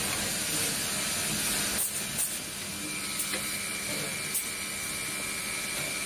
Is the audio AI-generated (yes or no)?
no